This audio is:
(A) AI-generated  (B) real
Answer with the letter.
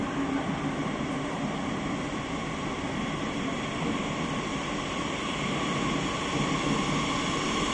B